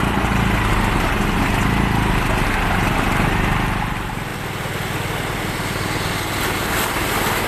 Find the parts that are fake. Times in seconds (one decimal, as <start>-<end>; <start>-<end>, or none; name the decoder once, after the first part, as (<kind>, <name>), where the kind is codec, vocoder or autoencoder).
none